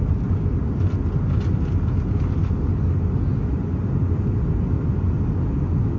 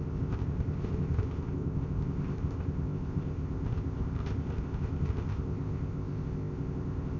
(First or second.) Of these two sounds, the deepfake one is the second